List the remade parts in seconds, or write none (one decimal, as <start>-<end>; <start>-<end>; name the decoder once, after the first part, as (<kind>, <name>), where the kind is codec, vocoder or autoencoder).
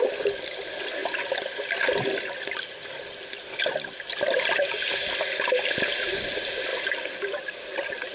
none